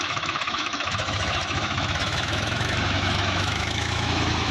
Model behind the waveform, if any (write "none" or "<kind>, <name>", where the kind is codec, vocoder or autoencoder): autoencoder, DAC-VAE